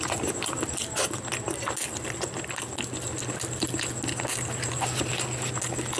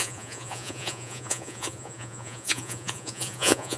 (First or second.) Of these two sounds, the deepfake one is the second